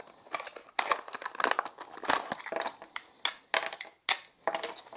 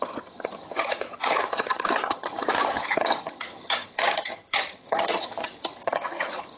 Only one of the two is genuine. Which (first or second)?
first